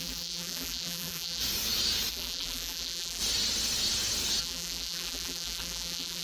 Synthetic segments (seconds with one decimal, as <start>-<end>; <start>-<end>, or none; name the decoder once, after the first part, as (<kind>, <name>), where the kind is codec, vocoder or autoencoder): 0.0-1.4 (vocoder, BigVGAN v2); 2.1-3.2; 4.4-6.2